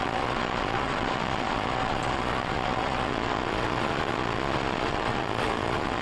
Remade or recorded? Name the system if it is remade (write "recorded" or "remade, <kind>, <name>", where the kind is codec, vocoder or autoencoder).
remade, vocoder, Vocos